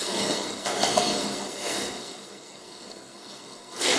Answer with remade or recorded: remade